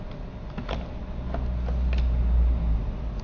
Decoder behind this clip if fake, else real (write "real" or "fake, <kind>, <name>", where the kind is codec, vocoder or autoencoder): real